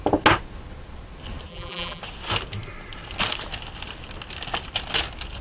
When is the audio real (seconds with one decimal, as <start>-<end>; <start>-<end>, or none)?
0.0-1.5; 2.0-5.4